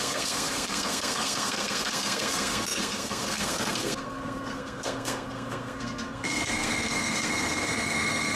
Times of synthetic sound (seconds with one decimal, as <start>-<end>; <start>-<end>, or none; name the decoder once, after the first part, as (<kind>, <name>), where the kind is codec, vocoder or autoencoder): 0.0-8.4 (codec, SNAC)